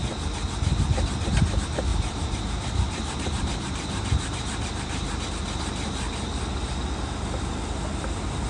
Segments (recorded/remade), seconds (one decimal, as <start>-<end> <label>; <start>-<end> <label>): 0.0-1.9 recorded; 1.9-5.3 remade; 5.3-8.5 recorded